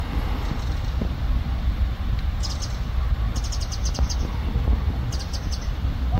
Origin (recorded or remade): recorded